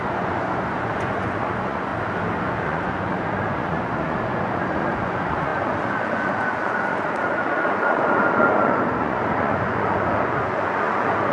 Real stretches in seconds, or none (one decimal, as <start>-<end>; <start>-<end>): 1.9-2.4